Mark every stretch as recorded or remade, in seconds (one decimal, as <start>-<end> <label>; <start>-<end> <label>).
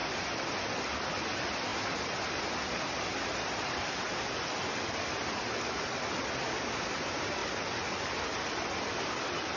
0.0-9.6 recorded